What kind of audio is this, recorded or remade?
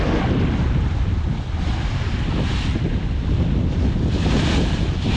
recorded